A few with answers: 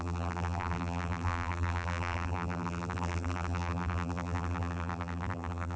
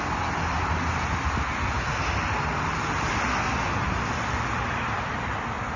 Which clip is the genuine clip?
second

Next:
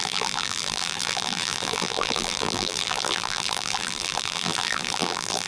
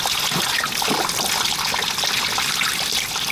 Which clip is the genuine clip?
second